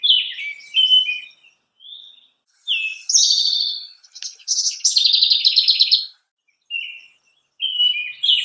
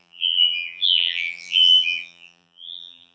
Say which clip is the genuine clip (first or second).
first